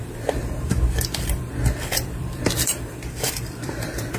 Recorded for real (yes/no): no